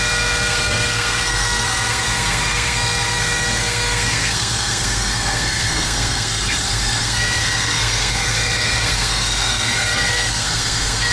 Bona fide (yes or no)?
no